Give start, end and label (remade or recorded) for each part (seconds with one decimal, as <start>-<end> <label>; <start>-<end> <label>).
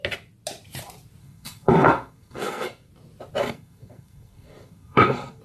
0.0-1.2 recorded; 1.2-2.9 remade; 2.9-3.4 recorded; 3.4-5.4 remade